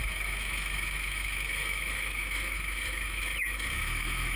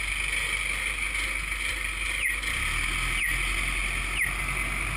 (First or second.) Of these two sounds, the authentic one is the second